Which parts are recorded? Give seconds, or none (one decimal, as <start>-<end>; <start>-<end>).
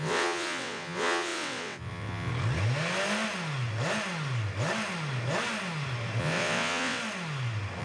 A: 2.3-6.2; 7.0-7.8